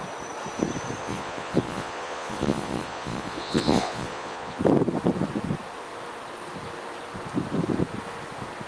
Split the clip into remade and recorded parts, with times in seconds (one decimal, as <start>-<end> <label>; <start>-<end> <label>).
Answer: 0.0-1.0 recorded; 1.0-4.6 remade; 4.6-8.7 recorded